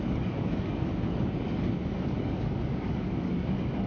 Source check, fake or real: fake